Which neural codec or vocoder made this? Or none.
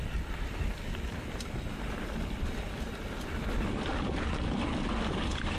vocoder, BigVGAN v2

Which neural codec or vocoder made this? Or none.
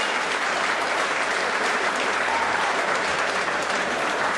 vocoder, BigVGAN v2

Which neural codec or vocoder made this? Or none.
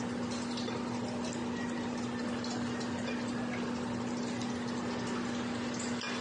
none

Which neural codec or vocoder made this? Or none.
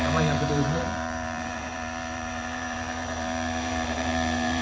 vocoder, BigVGAN v2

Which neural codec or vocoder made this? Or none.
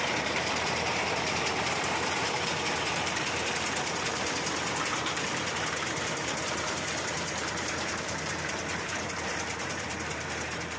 vocoder, BigVGAN v2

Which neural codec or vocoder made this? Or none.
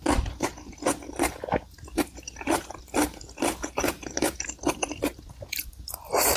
none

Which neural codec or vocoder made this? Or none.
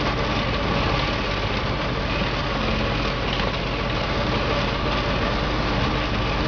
none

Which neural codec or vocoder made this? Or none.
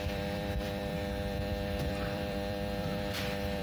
vocoder, BigVGAN v2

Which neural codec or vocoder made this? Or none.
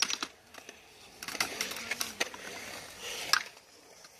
none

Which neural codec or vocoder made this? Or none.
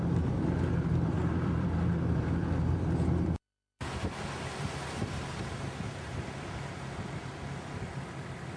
vocoder, BigVGAN v2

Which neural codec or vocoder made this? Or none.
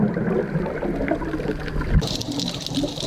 vocoder, BigVGAN v2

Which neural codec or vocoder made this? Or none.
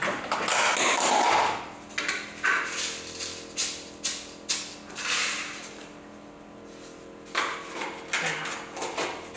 none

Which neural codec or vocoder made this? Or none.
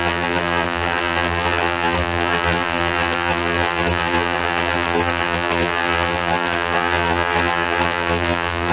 vocoder, BigVGAN v2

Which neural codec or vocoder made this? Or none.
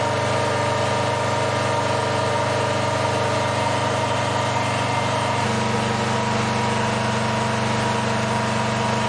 none